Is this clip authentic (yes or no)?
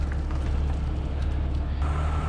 yes